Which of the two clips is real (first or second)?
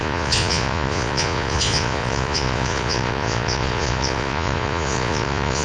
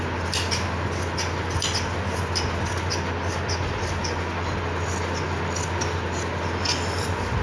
second